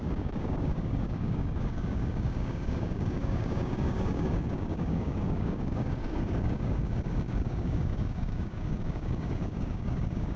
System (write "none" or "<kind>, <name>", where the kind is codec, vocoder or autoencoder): codec, DAC